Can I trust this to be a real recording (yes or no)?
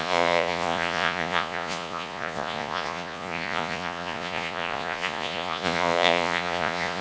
no